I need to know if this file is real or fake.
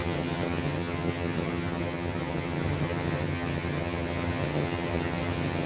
fake